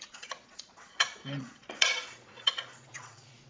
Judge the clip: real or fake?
fake